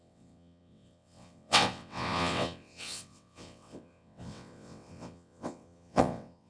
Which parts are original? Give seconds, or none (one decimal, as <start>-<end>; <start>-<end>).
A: none